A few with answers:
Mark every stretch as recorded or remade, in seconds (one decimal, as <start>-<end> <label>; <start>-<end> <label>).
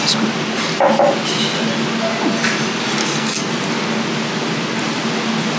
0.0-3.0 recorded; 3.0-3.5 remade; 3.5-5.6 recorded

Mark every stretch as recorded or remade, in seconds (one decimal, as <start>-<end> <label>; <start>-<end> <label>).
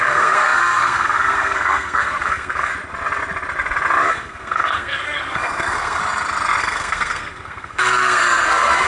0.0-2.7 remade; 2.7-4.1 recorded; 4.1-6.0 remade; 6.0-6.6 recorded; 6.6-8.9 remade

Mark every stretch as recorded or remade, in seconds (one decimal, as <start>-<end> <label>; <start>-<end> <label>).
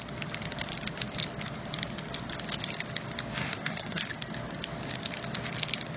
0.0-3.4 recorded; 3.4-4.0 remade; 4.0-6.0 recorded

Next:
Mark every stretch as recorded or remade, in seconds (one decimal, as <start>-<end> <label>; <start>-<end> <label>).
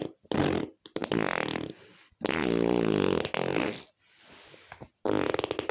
0.0-5.7 recorded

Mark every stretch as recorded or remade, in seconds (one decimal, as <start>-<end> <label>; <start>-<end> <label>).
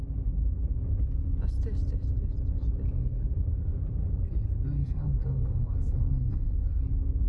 0.0-4.8 recorded; 4.8-6.8 remade; 6.8-7.3 recorded